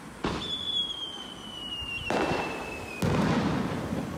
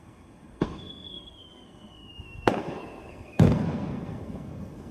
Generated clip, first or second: second